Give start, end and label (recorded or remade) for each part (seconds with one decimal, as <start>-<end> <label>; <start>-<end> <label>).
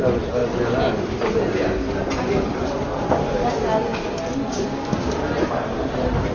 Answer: 0.0-6.3 recorded